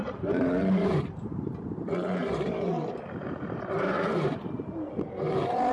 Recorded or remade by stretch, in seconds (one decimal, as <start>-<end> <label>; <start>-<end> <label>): 0.0-5.7 remade